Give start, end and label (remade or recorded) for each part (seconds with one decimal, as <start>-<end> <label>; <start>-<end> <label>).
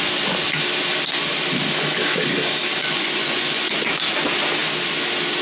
0.0-2.8 recorded; 2.8-3.9 remade; 3.9-5.4 recorded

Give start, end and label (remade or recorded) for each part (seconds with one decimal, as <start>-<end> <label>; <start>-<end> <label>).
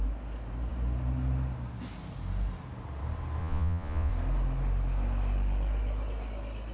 0.0-3.4 recorded; 3.4-4.1 remade; 4.1-6.7 recorded